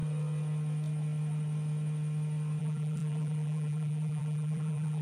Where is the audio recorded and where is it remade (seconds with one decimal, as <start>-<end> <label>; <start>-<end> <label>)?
0.0-2.6 recorded; 2.6-5.0 remade